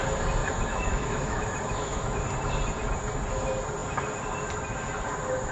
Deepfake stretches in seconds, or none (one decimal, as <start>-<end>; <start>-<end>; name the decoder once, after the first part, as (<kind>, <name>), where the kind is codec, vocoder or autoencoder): 0.4-2.2 (autoencoder, DAC-VAE)